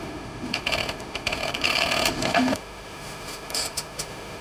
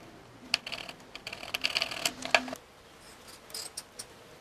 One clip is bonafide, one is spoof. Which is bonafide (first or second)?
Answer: second